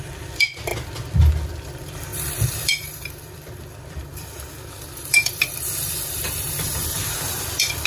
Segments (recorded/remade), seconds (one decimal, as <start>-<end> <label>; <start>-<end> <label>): 0.0-0.7 remade; 0.7-1.6 recorded; 1.6-7.9 remade